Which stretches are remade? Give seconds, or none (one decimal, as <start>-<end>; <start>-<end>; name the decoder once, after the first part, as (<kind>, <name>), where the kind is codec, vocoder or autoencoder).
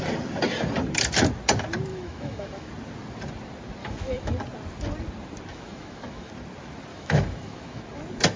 1.9-2.7 (autoencoder, DAC-VAE); 3.8-4.3; 5.5-6.3; 6.9-7.8